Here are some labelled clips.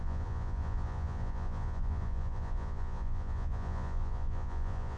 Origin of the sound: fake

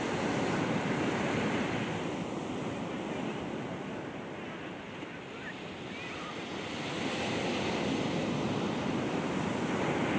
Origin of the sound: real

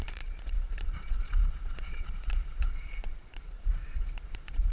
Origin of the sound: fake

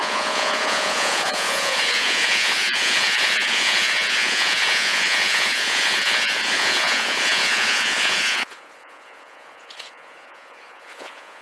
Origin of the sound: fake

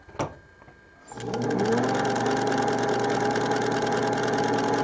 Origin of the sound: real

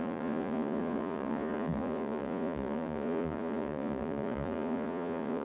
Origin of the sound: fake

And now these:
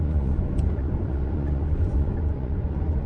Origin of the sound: fake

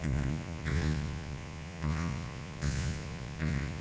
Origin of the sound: fake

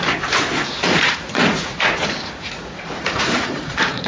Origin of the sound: fake